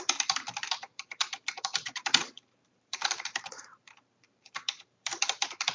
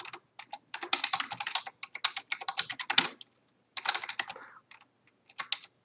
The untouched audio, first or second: second